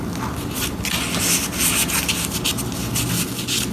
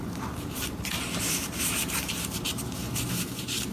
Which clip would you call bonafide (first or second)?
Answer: first